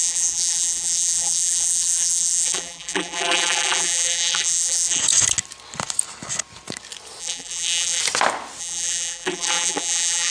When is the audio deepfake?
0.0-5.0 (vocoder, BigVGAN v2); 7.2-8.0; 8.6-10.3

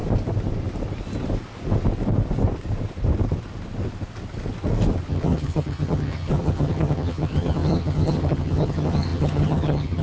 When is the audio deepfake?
5.1-10.0 (vocoder, HiFi-GAN)

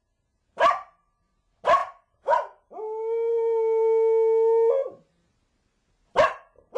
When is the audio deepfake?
none

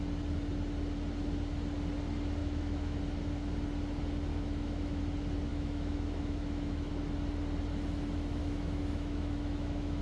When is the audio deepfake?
2.4-3.0 (autoencoder, DAC-VAE); 4.3-5.0; 5.5-6.9; 8.4-10.0

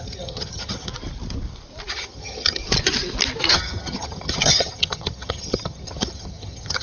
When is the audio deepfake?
0.0-0.9 (vocoder, HiFi-GAN); 1.9-2.6; 3.5-6.8

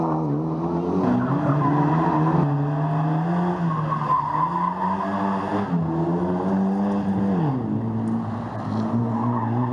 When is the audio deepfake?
none

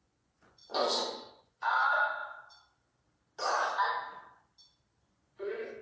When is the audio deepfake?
0.0-2.2 (vocoder, Vocos); 5.0-5.8

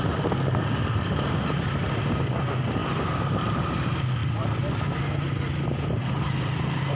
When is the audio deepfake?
none